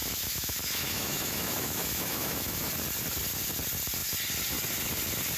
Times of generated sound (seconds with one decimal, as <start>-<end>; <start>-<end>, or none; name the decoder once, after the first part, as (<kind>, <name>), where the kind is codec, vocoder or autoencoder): 0.0-2.7 (autoencoder, DAC-VAE)